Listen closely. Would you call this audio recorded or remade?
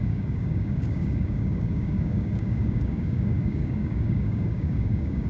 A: remade